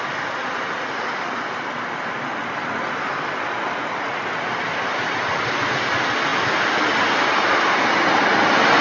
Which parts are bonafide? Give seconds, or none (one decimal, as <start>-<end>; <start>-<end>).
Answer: 0.0-8.8